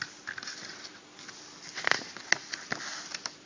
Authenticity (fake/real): real